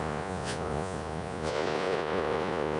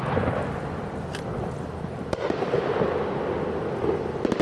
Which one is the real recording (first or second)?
second